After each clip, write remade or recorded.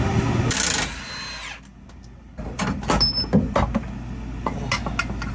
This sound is recorded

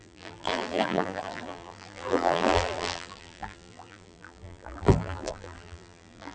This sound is remade